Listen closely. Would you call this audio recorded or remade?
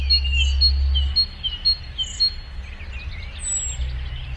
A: recorded